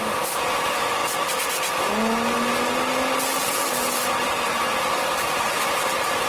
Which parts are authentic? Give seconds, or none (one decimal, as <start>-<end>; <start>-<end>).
1.0-4.8